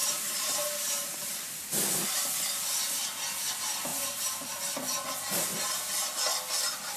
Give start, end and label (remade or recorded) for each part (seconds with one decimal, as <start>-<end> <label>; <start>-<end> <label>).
0.0-1.6 remade; 1.6-3.9 recorded; 3.9-4.6 remade; 4.6-7.0 recorded